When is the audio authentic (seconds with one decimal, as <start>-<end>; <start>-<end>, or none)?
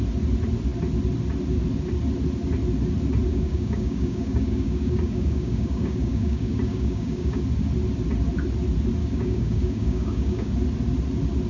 0.0-3.3; 7.4-9.0; 10.5-11.5